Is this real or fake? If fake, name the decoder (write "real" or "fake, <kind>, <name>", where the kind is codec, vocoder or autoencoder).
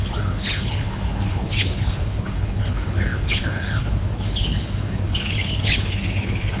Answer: fake, codec, HILCodec